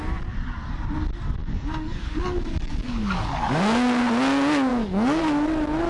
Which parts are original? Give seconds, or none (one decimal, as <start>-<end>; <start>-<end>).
0.0-1.4; 4.1-4.7; 5.2-5.9